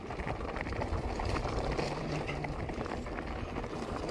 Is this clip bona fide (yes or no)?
yes